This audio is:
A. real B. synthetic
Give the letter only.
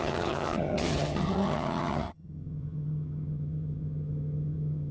B